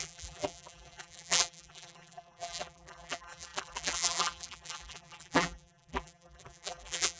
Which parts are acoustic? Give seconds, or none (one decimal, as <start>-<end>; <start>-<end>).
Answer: none